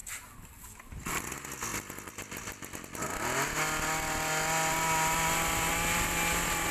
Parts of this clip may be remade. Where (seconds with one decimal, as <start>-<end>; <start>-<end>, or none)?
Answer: none